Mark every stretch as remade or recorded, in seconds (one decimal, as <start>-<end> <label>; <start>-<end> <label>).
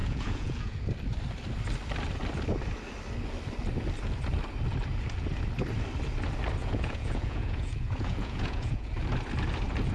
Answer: 0.0-0.9 remade; 0.9-6.6 recorded; 6.6-8.9 remade; 8.9-9.9 recorded